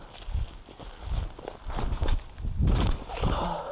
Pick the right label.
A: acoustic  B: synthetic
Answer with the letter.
A